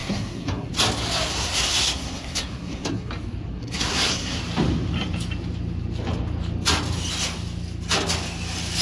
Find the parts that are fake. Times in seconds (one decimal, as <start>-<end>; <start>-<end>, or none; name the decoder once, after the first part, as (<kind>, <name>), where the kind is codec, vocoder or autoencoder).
0.0-0.7 (codec, SNAC); 1.3-3.1; 3.5-4.4